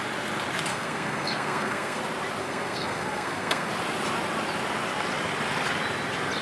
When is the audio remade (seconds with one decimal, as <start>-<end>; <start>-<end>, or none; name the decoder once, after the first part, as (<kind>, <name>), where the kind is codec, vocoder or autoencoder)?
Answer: 0.7-2.0 (codec, SNAC); 2.4-3.7